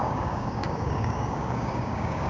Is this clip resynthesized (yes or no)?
yes